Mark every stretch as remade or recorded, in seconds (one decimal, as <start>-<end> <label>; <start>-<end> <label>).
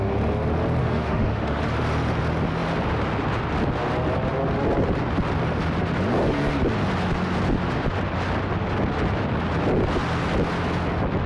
0.0-0.8 recorded; 0.8-1.6 remade; 1.6-11.3 recorded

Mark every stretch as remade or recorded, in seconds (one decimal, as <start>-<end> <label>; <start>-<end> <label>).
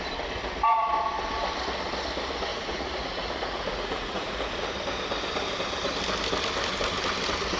0.0-2.5 recorded; 2.5-4.6 remade; 4.6-7.6 recorded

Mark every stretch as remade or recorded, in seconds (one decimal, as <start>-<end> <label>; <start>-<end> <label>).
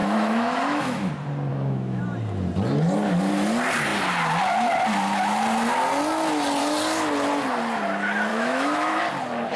0.0-1.1 remade; 1.1-1.5 recorded; 1.5-2.0 remade; 2.0-8.3 recorded; 8.3-9.0 remade; 9.0-9.6 recorded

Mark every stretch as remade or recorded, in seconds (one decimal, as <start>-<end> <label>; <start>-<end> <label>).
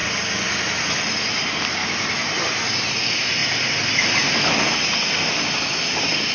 0.0-1.8 recorded; 1.8-2.7 remade; 2.7-3.4 recorded; 3.4-4.5 remade; 4.5-6.3 recorded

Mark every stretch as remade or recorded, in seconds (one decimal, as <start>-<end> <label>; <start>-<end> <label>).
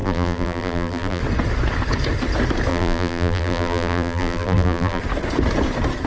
0.0-1.2 remade; 1.2-2.7 recorded; 2.7-5.0 remade; 5.0-6.1 recorded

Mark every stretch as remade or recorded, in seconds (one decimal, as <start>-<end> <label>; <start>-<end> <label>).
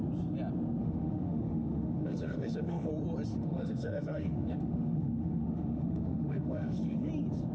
0.0-0.8 recorded; 0.8-2.9 remade; 2.9-3.3 recorded; 3.3-7.1 remade; 7.1-7.5 recorded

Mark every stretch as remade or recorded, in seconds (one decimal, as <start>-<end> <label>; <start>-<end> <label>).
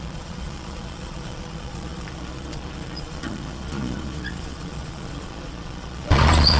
0.0-6.6 remade